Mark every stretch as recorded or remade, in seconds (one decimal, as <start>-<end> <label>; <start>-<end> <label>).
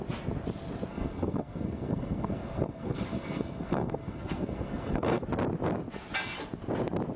0.0-0.9 recorded; 0.9-5.2 remade; 5.2-7.2 recorded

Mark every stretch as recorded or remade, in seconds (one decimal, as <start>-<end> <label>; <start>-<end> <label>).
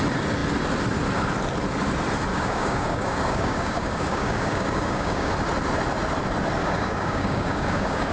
0.0-2.3 recorded; 2.3-5.3 remade; 5.3-6.6 recorded; 6.6-8.1 remade